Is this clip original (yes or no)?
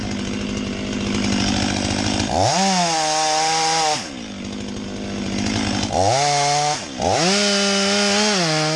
yes